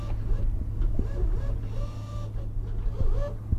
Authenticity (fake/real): real